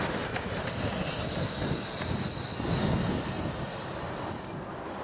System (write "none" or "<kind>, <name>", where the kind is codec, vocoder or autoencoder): none